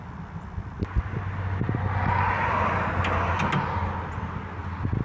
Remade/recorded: recorded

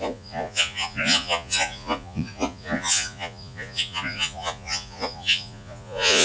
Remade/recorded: remade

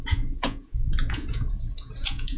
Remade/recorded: remade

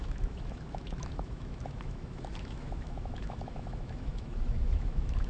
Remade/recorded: remade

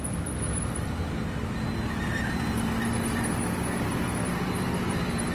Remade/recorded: recorded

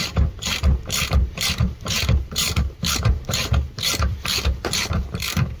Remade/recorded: remade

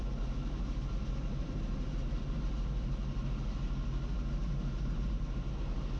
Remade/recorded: recorded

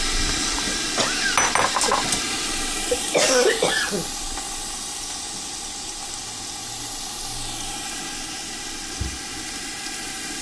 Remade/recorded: recorded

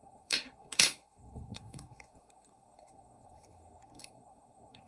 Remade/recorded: remade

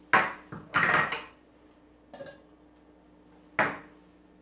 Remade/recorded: recorded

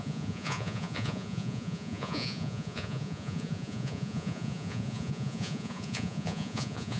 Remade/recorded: remade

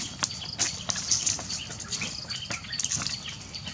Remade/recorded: recorded